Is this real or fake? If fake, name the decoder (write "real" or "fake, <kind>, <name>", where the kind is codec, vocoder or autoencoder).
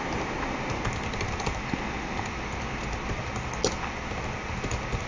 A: real